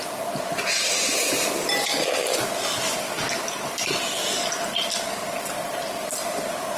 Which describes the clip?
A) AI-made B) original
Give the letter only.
B